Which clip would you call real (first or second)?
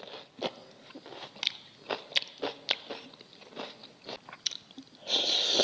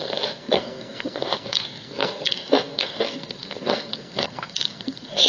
first